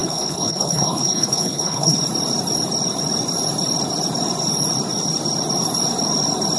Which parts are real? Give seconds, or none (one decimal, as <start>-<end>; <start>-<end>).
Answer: 2.0-6.6